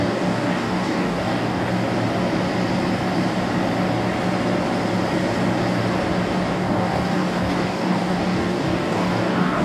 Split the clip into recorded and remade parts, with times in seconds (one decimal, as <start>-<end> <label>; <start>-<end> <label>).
0.0-1.7 remade; 1.7-6.5 recorded; 6.5-9.6 remade